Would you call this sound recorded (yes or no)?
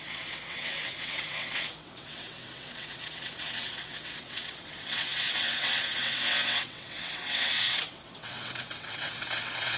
no